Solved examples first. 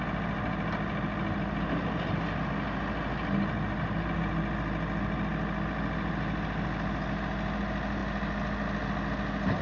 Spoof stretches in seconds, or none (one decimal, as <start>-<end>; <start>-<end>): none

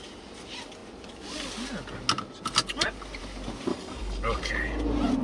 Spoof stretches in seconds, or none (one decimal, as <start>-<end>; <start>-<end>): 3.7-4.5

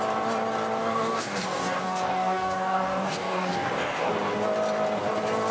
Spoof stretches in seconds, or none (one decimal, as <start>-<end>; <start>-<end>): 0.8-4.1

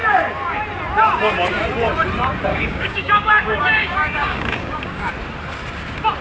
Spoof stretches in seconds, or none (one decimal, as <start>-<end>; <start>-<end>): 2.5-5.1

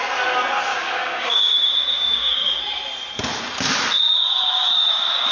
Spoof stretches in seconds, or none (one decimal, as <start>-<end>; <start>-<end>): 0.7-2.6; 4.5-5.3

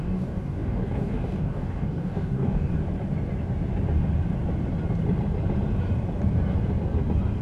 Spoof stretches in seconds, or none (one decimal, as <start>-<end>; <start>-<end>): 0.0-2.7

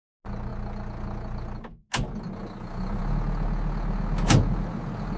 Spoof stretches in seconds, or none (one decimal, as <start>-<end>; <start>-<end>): none